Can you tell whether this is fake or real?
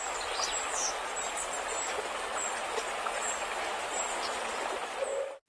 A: real